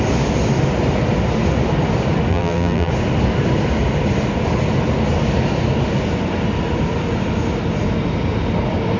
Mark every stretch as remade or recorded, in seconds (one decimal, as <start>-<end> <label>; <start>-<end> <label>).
0.0-2.3 recorded; 2.3-2.9 remade; 2.9-9.0 recorded